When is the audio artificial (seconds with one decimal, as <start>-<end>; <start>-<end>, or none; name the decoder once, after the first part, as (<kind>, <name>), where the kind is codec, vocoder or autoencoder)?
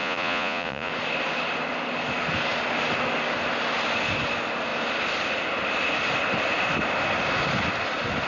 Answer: 0.0-0.9 (vocoder, Vocos)